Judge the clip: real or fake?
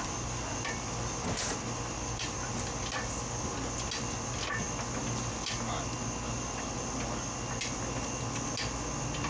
real